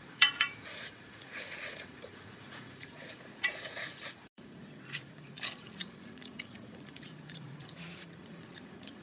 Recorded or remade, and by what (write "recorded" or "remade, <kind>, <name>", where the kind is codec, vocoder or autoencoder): remade, vocoder, Vocos